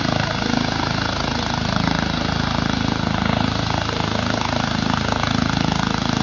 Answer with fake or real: real